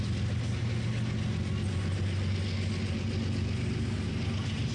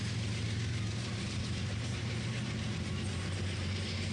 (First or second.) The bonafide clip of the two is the first